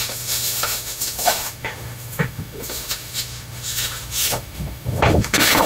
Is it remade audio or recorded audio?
remade